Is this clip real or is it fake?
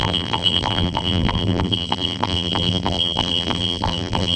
fake